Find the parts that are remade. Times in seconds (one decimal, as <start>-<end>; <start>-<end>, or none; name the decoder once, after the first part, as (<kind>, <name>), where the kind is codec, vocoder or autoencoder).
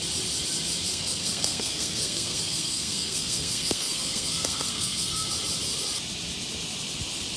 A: 0.9-5.3 (codec, SNAC)